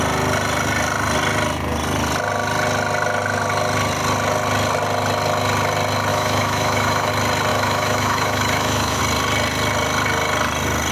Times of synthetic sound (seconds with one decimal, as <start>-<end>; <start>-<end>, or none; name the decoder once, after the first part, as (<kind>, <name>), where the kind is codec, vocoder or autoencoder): 6.1-7.1 (autoencoder, DAC-VAE); 7.5-9.0